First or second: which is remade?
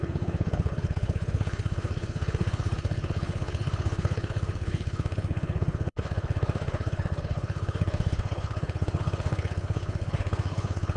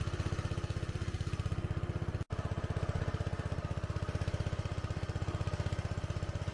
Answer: first